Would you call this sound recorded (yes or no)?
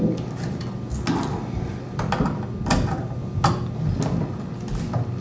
yes